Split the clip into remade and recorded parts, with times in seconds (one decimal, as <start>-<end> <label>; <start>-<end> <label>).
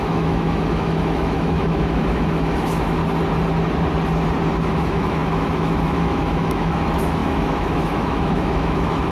0.0-3.0 remade; 3.0-4.6 recorded; 4.6-9.1 remade